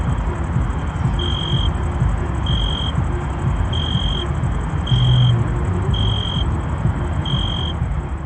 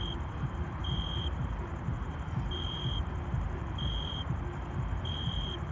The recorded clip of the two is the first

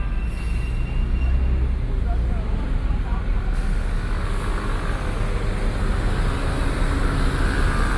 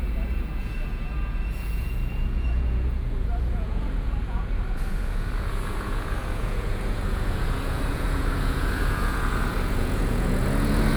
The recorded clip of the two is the first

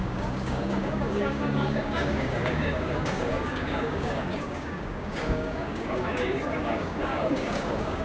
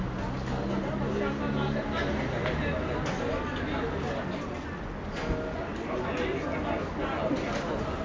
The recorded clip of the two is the second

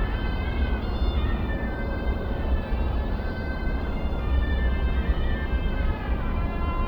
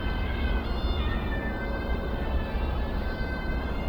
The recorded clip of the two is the second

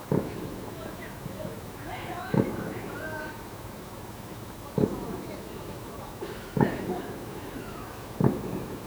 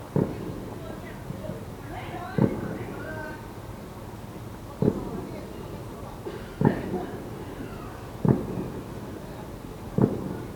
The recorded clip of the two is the second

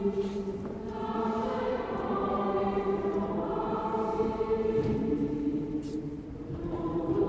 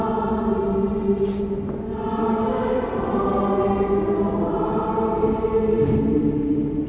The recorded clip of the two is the second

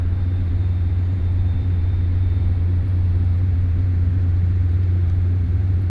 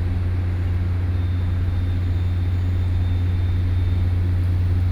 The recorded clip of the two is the second